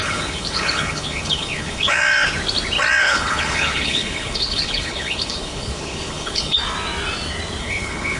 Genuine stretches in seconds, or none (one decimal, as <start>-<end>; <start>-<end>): 2.0-3.0; 6.6-7.6